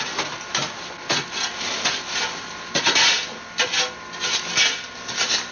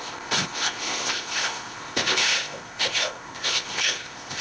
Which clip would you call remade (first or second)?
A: second